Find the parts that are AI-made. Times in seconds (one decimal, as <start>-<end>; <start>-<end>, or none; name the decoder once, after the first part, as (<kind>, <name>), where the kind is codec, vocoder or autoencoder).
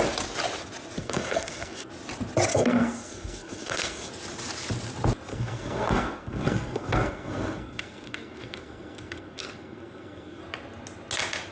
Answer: 1.0-1.9 (codec, SNAC); 2.5-4.1; 5.3-10.4